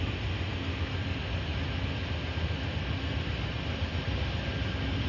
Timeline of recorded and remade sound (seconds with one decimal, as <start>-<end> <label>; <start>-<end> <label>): 0.0-5.1 recorded